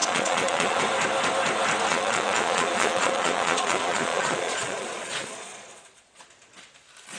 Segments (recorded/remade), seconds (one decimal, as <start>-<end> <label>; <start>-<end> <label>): 0.0-0.8 remade; 0.8-1.9 recorded; 1.9-6.2 remade; 6.2-7.2 recorded

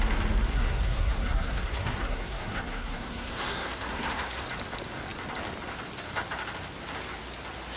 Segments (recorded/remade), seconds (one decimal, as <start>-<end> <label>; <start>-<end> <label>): 0.0-0.5 recorded; 0.5-4.4 remade; 4.4-7.8 recorded

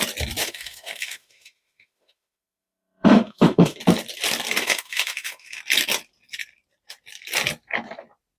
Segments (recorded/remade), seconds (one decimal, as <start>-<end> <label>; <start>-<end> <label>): 0.0-0.4 recorded; 0.4-3.8 remade; 3.8-4.6 recorded; 4.6-5.6 remade; 5.6-8.4 recorded

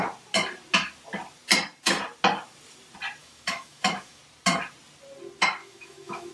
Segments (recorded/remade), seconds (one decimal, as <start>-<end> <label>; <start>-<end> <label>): 0.0-3.2 recorded; 3.2-4.2 remade; 4.2-5.6 recorded; 5.6-6.3 remade